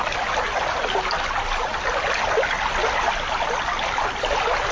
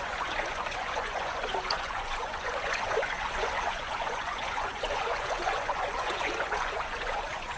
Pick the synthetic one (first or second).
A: second